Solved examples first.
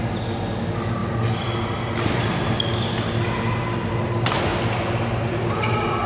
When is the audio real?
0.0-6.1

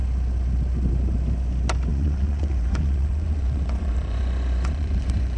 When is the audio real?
0.0-1.9

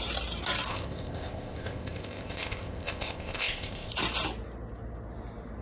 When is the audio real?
0.0-0.7; 3.9-5.6

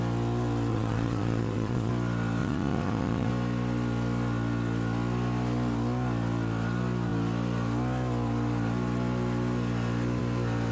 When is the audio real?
0.0-0.7; 1.9-2.4; 3.3-10.7

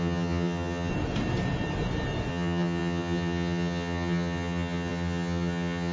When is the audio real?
0.9-2.3

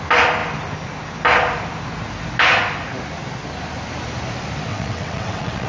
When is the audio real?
0.0-4.7

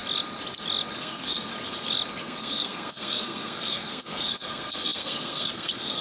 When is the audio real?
0.0-1.0; 1.5-2.2